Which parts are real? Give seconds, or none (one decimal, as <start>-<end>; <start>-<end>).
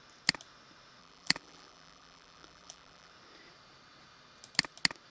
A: 0.0-1.0; 3.1-5.1